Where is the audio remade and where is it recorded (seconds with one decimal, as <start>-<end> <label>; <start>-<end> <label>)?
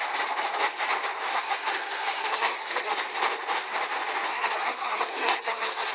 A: 0.0-1.3 recorded; 1.3-2.9 remade; 2.9-4.3 recorded; 4.3-5.9 remade